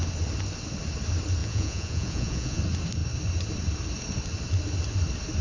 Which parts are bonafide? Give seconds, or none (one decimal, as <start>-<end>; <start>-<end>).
0.0-1.4; 2.6-5.4